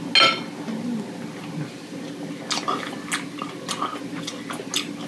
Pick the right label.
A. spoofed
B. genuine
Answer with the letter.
B